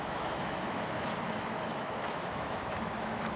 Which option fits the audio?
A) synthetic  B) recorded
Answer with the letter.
A